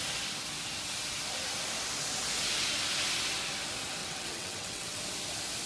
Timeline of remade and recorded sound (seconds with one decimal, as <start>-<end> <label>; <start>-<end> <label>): 0.0-4.0 recorded; 4.0-5.0 remade; 5.0-5.7 recorded